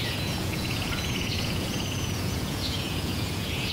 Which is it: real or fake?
fake